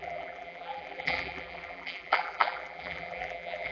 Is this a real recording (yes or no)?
no